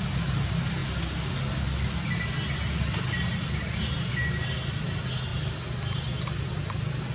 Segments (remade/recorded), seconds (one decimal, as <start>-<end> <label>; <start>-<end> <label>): 0.0-7.1 recorded